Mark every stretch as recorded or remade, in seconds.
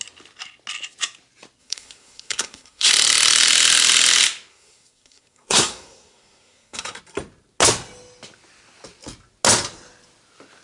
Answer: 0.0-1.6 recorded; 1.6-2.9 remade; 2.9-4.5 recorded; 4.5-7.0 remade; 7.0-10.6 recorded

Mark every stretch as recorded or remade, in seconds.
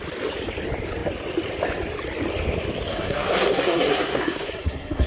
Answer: 0.0-2.9 recorded; 2.9-5.1 remade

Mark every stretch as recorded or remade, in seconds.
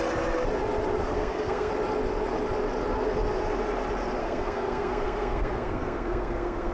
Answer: 0.0-1.0 recorded; 1.0-1.7 remade; 1.7-4.2 recorded; 4.2-6.7 remade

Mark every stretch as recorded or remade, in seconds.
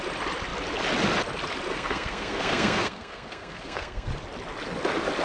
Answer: 0.0-1.7 recorded; 1.7-4.1 remade; 4.1-5.2 recorded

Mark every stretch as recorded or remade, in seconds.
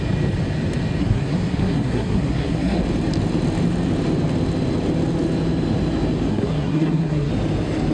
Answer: 0.0-1.0 recorded; 1.0-2.8 remade; 2.8-6.3 recorded; 6.3-7.3 remade; 7.3-7.9 recorded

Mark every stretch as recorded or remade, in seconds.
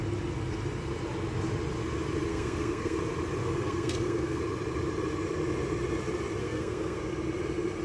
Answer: 0.0-2.3 recorded; 2.3-3.0 remade; 3.0-3.4 recorded; 3.4-4.4 remade; 4.4-6.4 recorded; 6.4-7.0 remade; 7.0-7.8 recorded